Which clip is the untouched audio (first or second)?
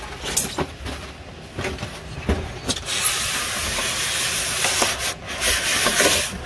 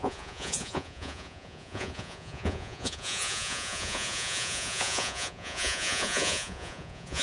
first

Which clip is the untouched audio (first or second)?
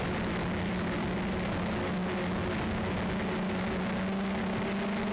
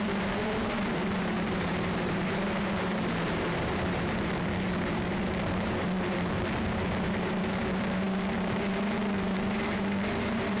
first